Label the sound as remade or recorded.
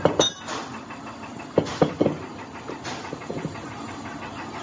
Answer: recorded